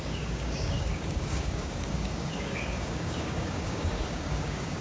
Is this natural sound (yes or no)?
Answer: no